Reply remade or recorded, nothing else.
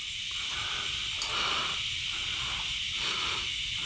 recorded